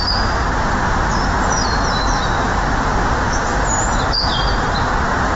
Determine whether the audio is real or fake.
real